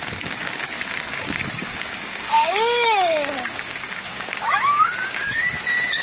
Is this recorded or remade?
remade